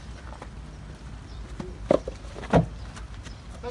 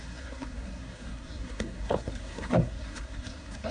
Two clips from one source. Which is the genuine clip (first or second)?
first